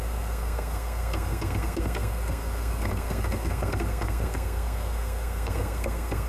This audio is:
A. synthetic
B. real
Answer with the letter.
A